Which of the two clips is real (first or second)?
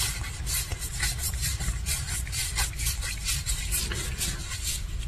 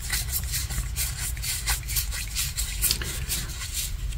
second